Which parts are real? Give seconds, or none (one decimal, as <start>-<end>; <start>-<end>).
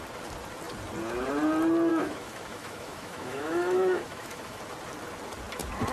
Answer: 0.0-1.9; 4.6-5.9